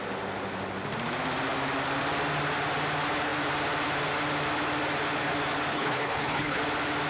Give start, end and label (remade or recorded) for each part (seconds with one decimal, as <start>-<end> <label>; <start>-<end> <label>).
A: 0.0-5.7 recorded; 5.7-6.6 remade; 6.6-7.1 recorded